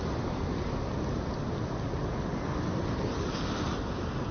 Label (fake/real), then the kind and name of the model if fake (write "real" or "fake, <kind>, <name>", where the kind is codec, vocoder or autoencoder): real